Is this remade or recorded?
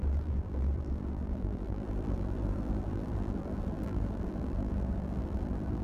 remade